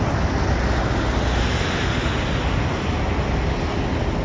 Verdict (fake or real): real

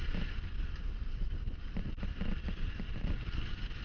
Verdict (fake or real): real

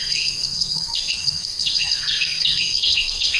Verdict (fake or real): fake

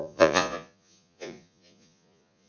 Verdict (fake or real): fake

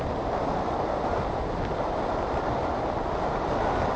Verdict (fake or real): real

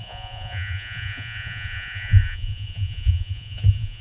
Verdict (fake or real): fake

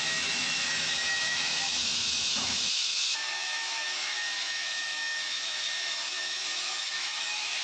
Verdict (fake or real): fake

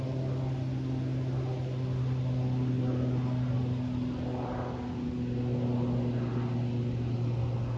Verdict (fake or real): real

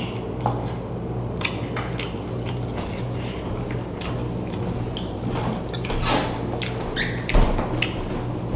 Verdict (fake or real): real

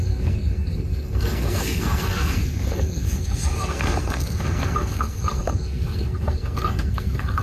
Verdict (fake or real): fake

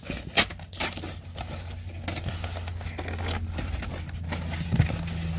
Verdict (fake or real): real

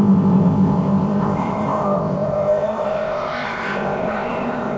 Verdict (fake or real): fake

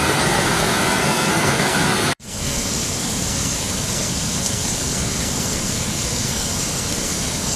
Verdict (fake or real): fake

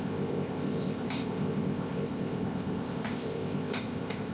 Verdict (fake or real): fake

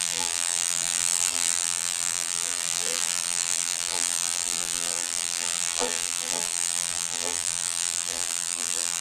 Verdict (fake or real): fake